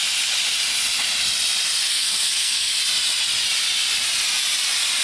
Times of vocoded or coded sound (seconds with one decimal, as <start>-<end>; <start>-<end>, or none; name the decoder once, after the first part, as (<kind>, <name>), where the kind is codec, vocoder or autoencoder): 1.9-2.8 (codec, SNAC)